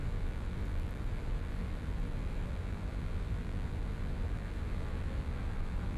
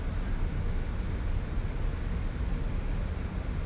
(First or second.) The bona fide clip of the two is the second